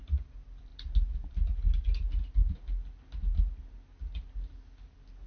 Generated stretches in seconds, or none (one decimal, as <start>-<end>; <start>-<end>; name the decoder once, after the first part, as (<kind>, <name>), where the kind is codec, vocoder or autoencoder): none